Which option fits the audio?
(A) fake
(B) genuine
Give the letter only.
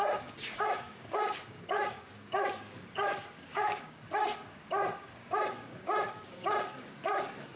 A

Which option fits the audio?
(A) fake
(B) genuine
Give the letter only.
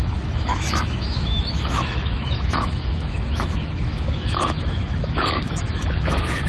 A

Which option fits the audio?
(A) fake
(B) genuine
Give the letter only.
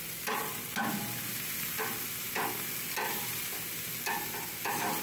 B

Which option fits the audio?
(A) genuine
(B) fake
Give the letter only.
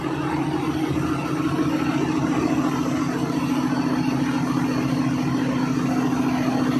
A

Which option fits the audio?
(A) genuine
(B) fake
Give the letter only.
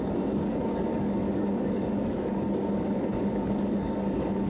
B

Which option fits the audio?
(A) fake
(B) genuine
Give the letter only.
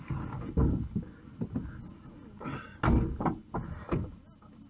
B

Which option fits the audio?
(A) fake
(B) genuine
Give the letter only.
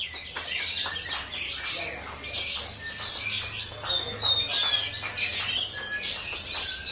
B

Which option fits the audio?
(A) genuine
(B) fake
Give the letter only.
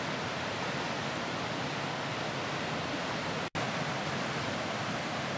A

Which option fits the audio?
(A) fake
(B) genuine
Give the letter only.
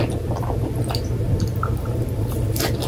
B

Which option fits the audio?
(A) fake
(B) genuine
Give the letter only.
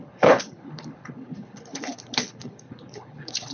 A